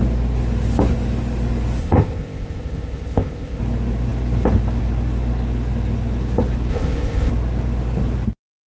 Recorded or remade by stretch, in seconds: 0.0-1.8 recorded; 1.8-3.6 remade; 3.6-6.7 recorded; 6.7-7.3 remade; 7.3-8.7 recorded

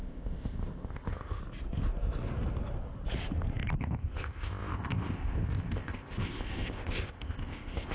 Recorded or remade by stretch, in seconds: 0.0-1.4 remade; 1.4-3.8 recorded; 3.8-7.9 remade

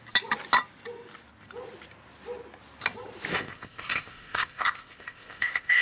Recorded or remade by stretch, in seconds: 0.0-3.3 recorded; 3.3-5.8 remade

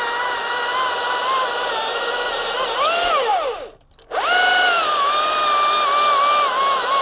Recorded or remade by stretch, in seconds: 0.0-7.0 recorded

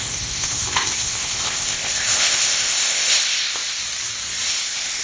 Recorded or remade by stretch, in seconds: 0.0-3.8 remade; 3.8-4.5 recorded; 4.5-5.0 remade

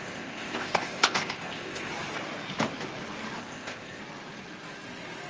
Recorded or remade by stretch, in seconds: 0.0-1.9 remade; 1.9-3.4 recorded; 3.4-4.0 remade; 4.0-5.3 recorded

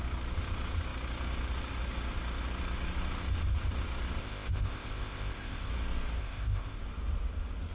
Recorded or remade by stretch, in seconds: 0.0-4.2 recorded; 4.2-5.7 remade; 5.7-6.2 recorded; 6.2-6.8 remade; 6.8-7.7 recorded

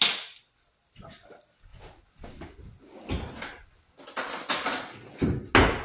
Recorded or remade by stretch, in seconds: 0.0-5.8 recorded